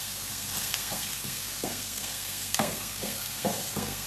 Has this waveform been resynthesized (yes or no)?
yes